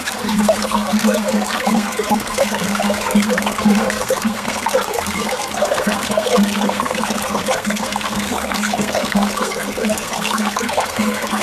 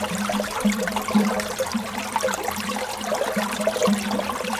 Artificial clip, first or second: first